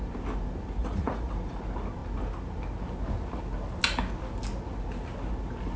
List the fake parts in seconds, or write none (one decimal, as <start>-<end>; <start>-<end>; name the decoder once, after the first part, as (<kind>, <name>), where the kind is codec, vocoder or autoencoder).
0.8-1.6 (vocoder, Vocos)